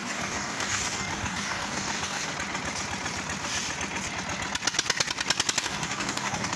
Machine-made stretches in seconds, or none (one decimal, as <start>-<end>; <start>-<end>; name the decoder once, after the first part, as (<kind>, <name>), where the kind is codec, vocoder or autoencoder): 0.0-2.3 (codec, DAC); 5.6-6.6

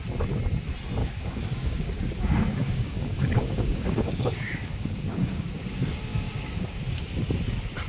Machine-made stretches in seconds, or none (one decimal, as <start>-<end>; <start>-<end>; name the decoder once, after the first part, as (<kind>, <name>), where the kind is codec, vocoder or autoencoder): 1.0-5.6 (codec, DAC); 6.1-6.8

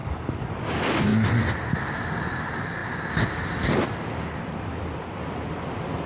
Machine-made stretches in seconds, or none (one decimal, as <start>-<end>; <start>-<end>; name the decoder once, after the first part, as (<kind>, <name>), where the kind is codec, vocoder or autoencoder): 0.0-0.5 (codec, DAC)

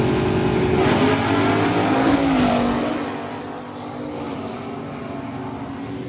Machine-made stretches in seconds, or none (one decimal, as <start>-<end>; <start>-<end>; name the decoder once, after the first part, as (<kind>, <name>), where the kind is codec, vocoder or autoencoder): 1.8-2.5 (codec, DAC)